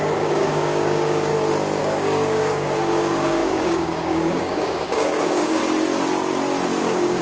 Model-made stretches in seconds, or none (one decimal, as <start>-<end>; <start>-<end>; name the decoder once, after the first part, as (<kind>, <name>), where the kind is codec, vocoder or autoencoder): 0.0-1.3 (codec, DAC); 1.8-5.6; 6.8-7.2

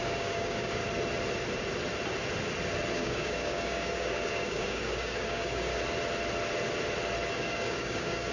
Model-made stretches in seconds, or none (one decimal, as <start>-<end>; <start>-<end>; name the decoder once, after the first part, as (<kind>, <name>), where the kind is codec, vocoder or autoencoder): 0.0-0.8 (codec, DAC); 2.9-5.7; 7.3-8.3

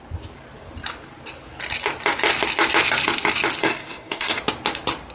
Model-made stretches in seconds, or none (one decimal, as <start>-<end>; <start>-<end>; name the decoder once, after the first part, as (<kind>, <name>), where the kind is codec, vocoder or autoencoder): 3.6-4.4 (codec, DAC)